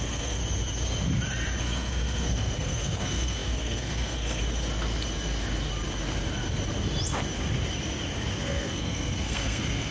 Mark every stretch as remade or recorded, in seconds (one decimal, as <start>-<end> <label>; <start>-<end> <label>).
0.0-0.4 remade; 0.4-1.6 recorded; 1.6-4.4 remade; 4.4-8.4 recorded; 8.4-9.9 remade